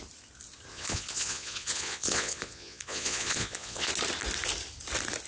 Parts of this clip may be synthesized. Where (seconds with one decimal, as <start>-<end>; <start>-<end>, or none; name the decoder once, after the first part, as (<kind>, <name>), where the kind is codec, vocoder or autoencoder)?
0.7-3.9 (vocoder, Vocos)